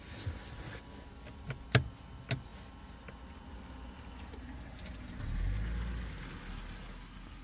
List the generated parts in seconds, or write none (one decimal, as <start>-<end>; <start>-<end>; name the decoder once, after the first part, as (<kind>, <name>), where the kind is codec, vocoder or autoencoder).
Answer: none